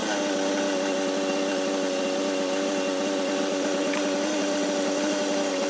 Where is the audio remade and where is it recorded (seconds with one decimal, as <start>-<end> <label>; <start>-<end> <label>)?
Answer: 0.0-3.4 recorded; 3.4-5.7 remade